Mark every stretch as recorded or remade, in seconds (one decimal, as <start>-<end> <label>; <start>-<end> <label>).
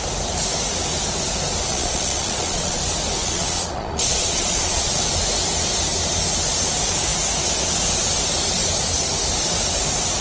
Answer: 0.0-1.7 recorded; 1.7-2.8 remade; 2.8-3.2 recorded; 3.2-5.0 remade; 5.0-10.2 recorded